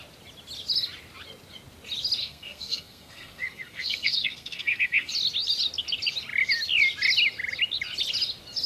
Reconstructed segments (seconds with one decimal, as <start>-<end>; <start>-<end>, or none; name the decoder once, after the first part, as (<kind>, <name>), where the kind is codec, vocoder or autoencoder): 2.2-5.1 (codec, SNAC)